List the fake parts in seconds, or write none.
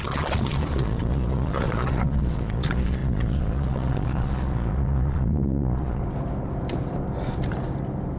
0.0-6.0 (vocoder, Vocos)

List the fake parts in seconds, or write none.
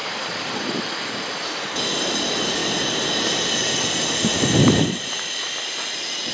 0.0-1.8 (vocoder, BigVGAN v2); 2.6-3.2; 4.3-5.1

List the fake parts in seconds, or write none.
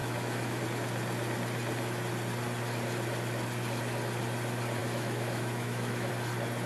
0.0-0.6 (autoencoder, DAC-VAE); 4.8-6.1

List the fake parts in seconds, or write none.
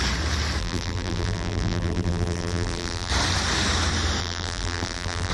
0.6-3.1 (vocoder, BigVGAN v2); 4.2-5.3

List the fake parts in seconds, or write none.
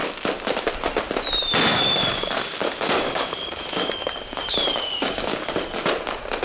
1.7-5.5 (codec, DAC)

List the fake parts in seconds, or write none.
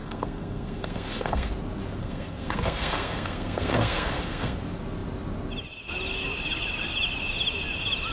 0.0-1.5 (codec, SNAC); 2.0-4.6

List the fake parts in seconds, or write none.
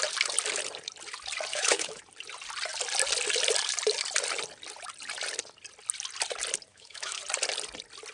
1.5-2.0 (autoencoder, DAC-VAE); 6.7-7.2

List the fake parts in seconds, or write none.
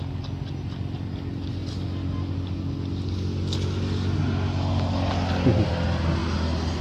none